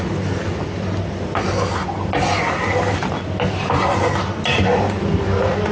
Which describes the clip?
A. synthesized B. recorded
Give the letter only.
B